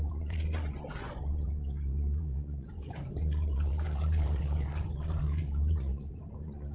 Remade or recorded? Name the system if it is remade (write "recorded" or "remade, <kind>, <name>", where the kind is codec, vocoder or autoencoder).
remade, vocoder, Vocos